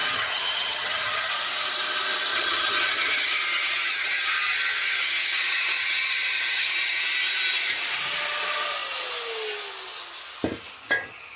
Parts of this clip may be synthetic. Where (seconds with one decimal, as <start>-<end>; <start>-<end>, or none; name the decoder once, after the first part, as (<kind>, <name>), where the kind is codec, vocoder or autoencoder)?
0.0-1.3 (vocoder, HiFi-GAN); 2.3-7.0